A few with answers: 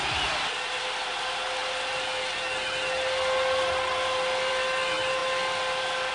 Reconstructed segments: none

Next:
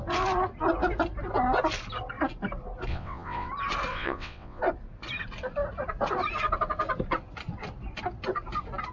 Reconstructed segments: 2.9-3.5 (vocoder, WaveNeXt); 3.9-4.6

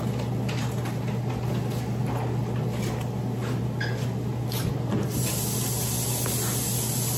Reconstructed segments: none

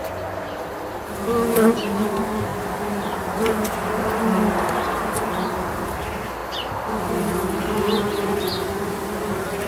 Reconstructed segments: 6.4-7.1 (vocoder, BigVGAN v2)

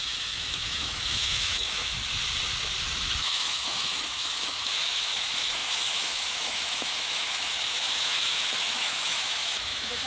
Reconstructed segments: 0.0-2.0 (autoencoder, DAC-VAE); 3.2-10.1

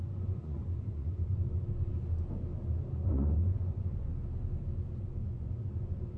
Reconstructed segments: 0.0-1.9 (vocoder, Vocos); 3.1-4.1; 5.0-6.2

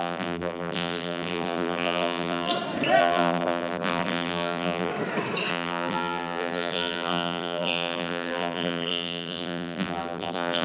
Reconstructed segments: 0.0-2.5 (vocoder, BigVGAN v2); 3.0-4.9; 5.5-10.6

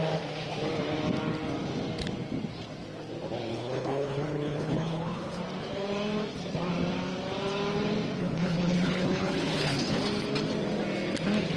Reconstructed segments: 3.5-5.4 (codec, HILCodec); 8.2-10.0